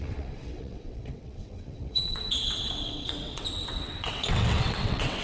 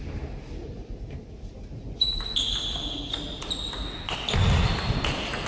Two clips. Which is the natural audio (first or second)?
second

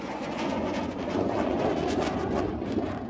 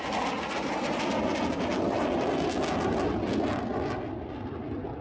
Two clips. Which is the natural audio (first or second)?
second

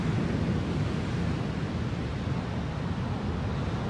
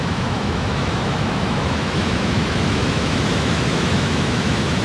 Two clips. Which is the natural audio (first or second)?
first